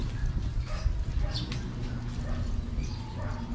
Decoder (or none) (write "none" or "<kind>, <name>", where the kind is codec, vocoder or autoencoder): none